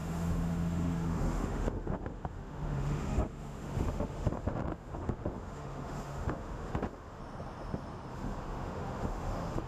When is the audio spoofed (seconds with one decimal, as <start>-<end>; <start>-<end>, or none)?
0.0-7.2; 8.1-9.7